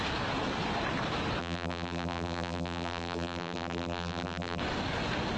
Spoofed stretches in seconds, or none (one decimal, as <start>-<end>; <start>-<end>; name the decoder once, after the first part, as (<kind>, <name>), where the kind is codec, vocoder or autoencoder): 1.4-4.6 (vocoder, BigVGAN v2)